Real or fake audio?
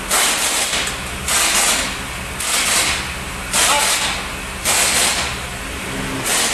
real